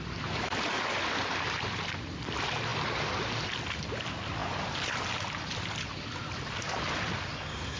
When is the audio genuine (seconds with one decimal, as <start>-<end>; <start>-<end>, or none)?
0.0-7.8